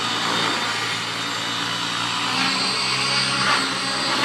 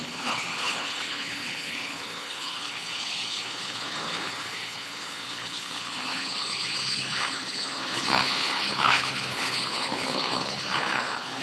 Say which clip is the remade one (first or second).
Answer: second